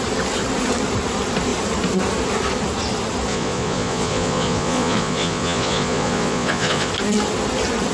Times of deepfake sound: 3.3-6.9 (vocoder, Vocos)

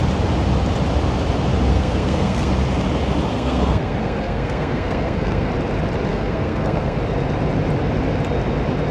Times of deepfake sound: 1.7-2.5 (codec, SNAC); 3.3-5.5; 6.1-7.0